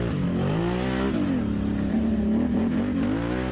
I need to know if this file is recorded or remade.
recorded